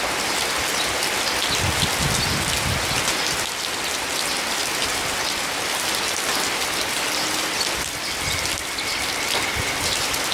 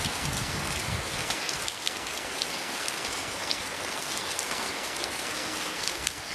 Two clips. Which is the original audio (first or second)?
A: first